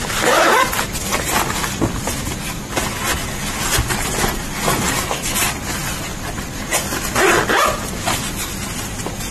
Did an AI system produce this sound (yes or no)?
no